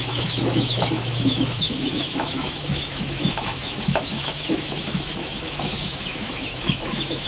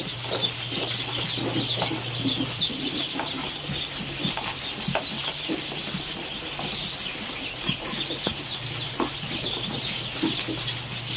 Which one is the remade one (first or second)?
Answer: first